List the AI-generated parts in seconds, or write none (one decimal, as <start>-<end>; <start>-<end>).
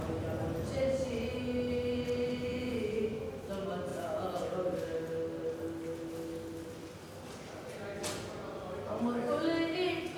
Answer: 2.5-3.0; 3.9-4.5